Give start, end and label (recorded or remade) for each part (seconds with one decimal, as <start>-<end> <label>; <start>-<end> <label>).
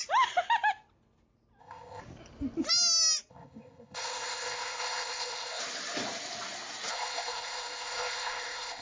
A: 0.0-1.6 recorded; 1.6-2.0 remade; 2.0-3.3 recorded; 3.3-5.6 remade; 5.6-6.9 recorded; 6.9-8.8 remade